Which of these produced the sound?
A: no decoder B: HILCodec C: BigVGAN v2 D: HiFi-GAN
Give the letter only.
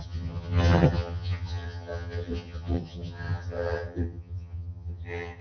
D